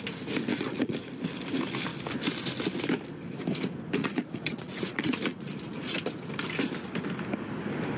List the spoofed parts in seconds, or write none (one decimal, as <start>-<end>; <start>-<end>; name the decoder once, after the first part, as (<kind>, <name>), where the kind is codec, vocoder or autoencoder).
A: 0.5-1.1 (vocoder, Vocos); 4.0-6.0